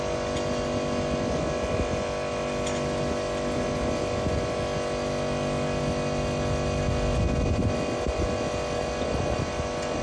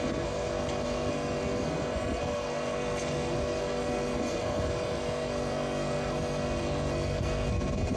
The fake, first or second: second